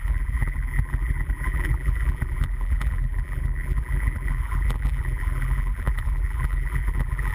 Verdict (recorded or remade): remade